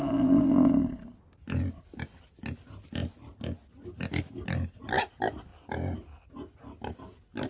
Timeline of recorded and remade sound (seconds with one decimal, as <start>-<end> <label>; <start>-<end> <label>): 0.0-7.5 recorded